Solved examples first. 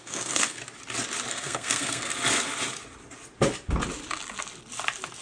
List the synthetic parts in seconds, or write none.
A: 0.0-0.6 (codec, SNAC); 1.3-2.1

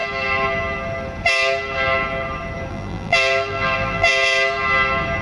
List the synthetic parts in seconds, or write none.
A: 2.7-4.1 (vocoder, BigVGAN v2)